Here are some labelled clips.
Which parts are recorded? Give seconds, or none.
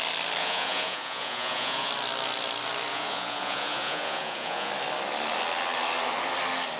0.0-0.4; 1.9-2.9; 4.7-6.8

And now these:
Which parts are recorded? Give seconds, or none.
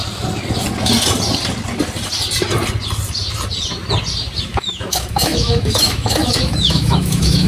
0.0-4.5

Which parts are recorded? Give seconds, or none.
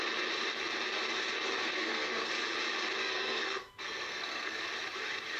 0.0-1.6; 2.3-3.0; 4.6-5.4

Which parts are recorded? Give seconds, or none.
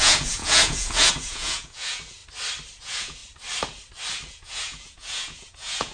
2.2-2.8; 3.2-4.3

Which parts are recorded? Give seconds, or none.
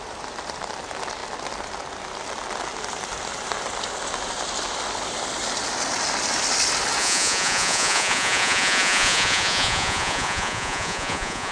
0.0-7.0